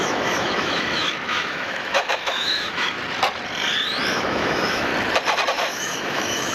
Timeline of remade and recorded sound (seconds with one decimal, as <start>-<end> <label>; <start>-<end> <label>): 0.0-3.0 remade; 3.0-4.1 recorded; 4.1-4.9 remade; 4.9-5.5 recorded; 5.5-6.5 remade